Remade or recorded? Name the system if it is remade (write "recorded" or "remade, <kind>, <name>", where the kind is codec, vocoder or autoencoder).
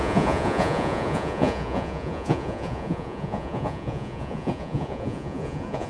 remade, vocoder, Vocos